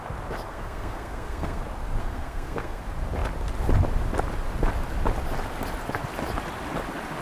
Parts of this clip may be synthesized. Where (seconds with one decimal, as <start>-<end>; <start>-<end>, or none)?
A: 0.5-1.6; 2.0-2.8